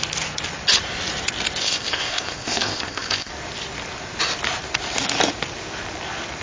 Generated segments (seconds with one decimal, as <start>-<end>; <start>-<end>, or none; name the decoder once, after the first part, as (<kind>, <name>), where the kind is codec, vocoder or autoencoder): 1.6-3.3 (codec, ZipCodec)